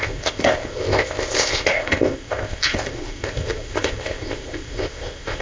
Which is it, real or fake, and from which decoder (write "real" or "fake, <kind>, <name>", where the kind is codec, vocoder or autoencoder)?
fake, codec, ZipCodec